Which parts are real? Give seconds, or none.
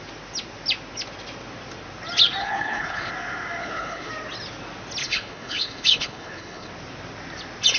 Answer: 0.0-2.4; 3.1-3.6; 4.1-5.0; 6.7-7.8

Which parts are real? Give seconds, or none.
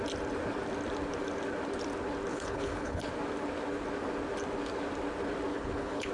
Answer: 0.0-2.3; 3.1-5.5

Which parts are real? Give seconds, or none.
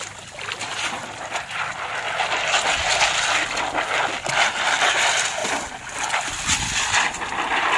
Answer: 0.0-7.8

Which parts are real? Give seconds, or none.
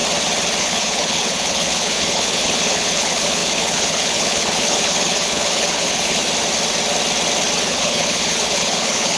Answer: 0.0-0.6; 6.2-7.6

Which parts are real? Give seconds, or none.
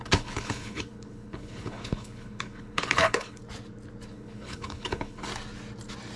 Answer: 3.4-4.1; 5.3-6.2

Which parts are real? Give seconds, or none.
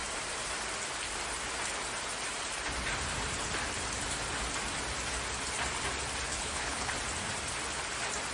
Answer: 0.0-6.3; 6.9-8.3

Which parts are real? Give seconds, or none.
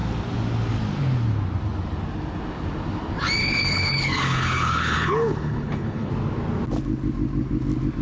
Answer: 0.0-3.4; 6.1-8.0